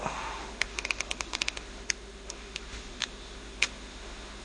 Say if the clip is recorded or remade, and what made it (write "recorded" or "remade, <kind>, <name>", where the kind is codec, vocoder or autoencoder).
remade, autoencoder, DAC-VAE